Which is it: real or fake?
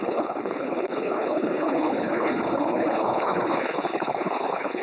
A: fake